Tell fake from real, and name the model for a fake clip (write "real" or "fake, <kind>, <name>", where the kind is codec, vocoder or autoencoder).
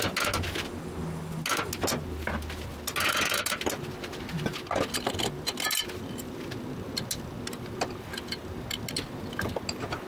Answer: real